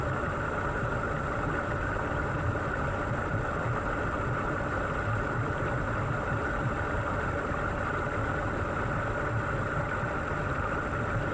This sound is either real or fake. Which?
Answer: real